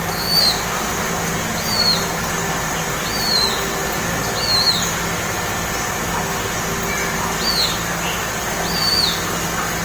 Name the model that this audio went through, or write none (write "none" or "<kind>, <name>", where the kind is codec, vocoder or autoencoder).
none